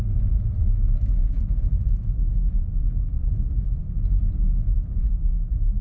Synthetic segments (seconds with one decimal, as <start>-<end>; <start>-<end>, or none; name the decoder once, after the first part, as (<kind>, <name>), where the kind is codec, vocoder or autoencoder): 0.0-5.8 (vocoder, Vocos)